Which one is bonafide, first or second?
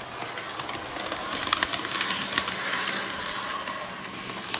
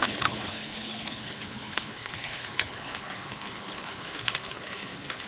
first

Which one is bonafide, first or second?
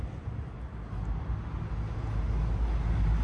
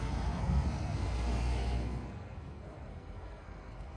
first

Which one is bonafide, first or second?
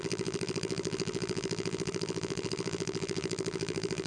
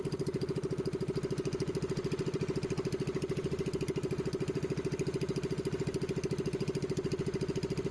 second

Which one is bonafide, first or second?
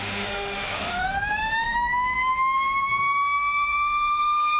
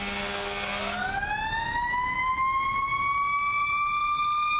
second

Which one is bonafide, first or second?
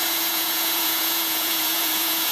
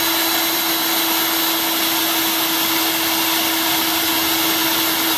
second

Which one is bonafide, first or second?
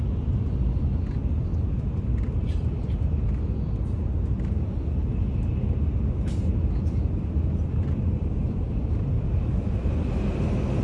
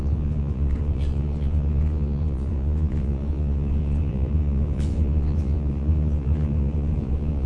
first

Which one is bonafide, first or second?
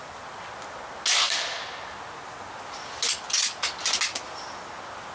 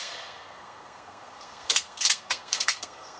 first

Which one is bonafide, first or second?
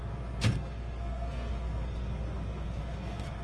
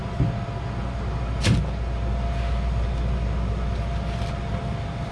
second